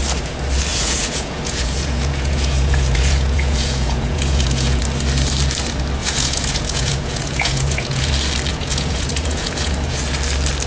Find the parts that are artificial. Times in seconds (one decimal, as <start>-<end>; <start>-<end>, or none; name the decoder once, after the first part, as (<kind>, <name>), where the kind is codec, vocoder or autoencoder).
0.7-4.8 (vocoder, Vocos); 6.0-8.1; 8.5-10.0